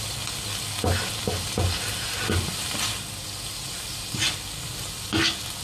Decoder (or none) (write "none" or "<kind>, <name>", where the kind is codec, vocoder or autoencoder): none